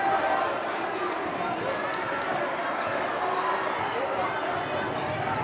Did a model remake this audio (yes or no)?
no